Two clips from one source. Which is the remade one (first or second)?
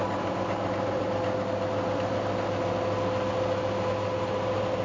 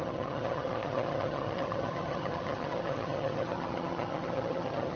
second